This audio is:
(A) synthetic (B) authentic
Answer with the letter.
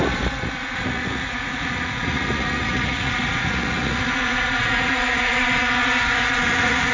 A